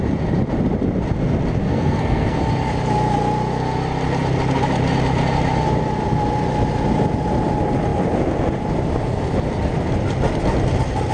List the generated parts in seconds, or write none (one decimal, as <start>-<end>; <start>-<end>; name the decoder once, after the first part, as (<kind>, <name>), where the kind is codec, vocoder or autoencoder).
1.6-2.4 (codec, SNAC)